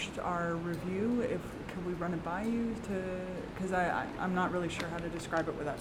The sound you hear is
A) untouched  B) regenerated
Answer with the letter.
A